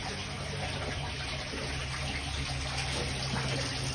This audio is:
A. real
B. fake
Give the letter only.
A